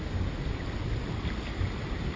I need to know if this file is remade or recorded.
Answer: recorded